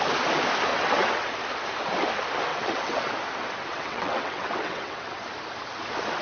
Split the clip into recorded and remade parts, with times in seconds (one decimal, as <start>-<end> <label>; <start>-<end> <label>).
0.0-0.7 recorded; 0.7-1.3 remade; 1.3-2.5 recorded; 2.5-3.1 remade; 3.1-3.7 recorded; 3.7-5.2 remade; 5.2-6.2 recorded